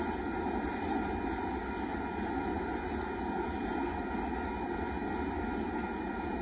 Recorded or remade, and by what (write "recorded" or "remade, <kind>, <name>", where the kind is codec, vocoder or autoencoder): recorded